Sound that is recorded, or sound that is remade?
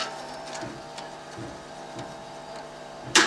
remade